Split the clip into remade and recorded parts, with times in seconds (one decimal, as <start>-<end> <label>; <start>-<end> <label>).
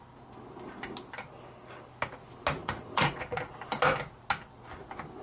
0.0-2.6 recorded; 2.6-3.2 remade; 3.2-5.2 recorded